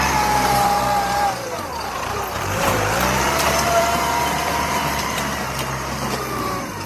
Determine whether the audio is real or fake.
fake